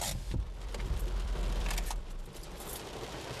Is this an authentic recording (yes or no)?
no